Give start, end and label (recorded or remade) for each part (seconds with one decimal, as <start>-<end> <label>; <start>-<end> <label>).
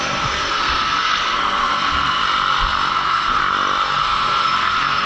0.0-2.2 remade; 2.2-2.9 recorded; 2.9-3.4 remade; 3.4-4.0 recorded; 4.0-5.1 remade